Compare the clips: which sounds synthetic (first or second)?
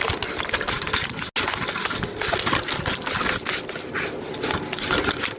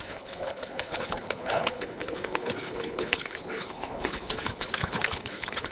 second